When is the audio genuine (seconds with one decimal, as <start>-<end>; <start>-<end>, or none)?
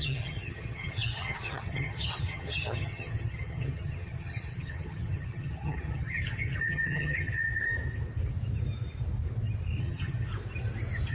7.5-9.8; 10.3-11.1